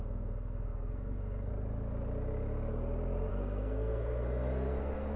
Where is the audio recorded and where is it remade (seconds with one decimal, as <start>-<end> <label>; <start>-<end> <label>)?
0.0-1.5 remade; 1.5-3.3 recorded; 3.3-5.2 remade